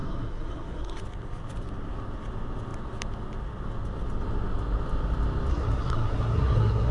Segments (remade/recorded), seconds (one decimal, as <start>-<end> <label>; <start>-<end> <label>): 0.0-1.0 remade; 1.0-5.5 recorded; 5.5-6.9 remade